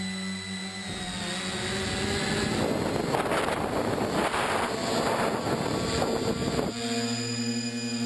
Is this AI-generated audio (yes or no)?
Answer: no